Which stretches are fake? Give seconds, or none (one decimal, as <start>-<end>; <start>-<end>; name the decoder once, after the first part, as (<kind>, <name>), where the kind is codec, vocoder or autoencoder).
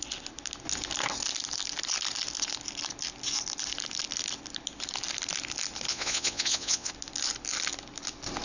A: 5.9-6.9 (vocoder, Vocos)